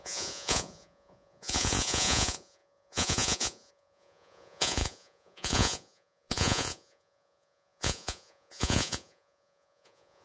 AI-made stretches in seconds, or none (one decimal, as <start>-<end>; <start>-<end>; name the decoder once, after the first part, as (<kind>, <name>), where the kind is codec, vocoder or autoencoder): 0.0-10.2 (vocoder, Vocos)